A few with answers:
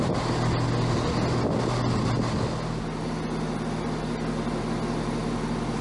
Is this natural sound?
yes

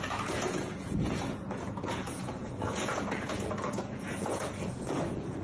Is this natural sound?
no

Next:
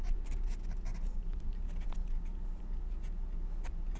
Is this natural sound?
yes